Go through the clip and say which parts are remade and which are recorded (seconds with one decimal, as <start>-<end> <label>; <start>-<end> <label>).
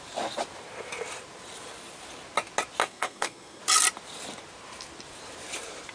0.0-2.8 recorded; 2.8-3.6 remade; 3.6-5.9 recorded